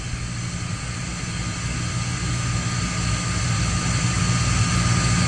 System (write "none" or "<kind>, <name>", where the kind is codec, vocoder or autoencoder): none